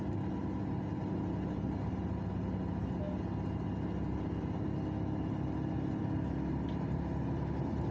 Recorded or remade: recorded